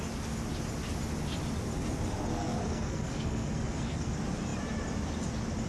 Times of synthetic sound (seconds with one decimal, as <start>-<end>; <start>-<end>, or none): 2.3-4.1